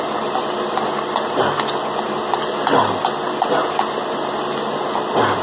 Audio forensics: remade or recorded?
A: recorded